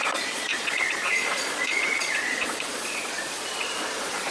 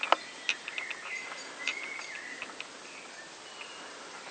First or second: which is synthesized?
first